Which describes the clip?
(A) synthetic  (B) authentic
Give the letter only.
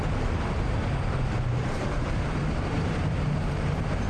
A